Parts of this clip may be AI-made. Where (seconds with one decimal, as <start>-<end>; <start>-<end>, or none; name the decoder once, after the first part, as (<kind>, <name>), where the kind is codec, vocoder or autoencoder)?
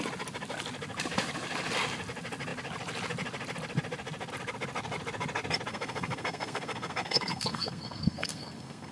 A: 5.7-8.9 (codec, SNAC)